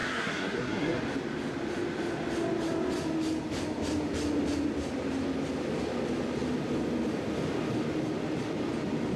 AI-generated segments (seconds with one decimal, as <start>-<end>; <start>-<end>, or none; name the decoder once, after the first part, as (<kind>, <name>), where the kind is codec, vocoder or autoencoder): 0.0-1.0 (codec, SNAC)